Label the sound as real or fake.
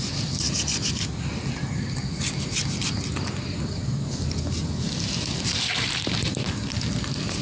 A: real